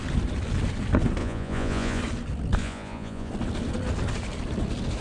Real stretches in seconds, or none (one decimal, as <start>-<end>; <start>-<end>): 0.0-1.2; 2.0-2.6; 3.3-5.0

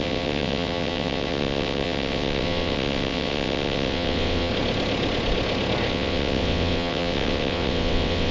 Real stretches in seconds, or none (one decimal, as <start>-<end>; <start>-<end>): 4.5-5.9

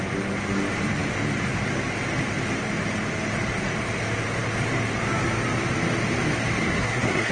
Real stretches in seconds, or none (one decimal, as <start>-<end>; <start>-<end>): 0.0-6.6

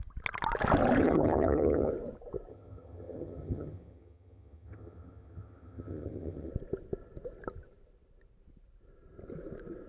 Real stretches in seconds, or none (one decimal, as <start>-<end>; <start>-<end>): 0.0-1.0; 1.9-2.5; 6.5-9.9